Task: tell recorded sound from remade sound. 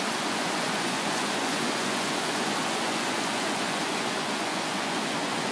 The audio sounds remade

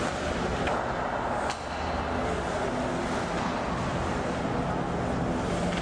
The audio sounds recorded